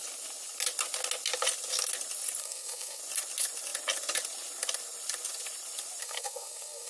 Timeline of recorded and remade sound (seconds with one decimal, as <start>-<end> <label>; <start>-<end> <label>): 0.0-2.4 recorded; 2.4-3.0 remade; 3.0-6.0 recorded; 6.0-6.9 remade